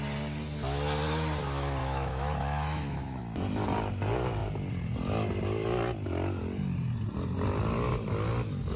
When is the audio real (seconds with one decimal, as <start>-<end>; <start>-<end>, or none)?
0.0-1.8; 3.2-8.8